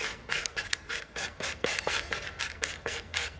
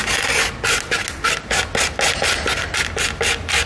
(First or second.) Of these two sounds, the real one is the second